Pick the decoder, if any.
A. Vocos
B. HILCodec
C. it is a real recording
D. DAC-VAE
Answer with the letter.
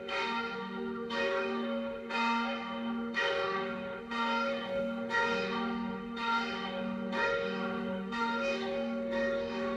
D